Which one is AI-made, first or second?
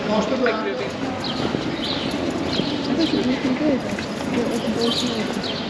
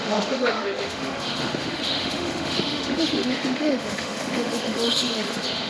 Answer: second